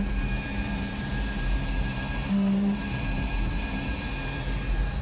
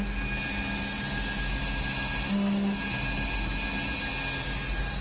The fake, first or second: first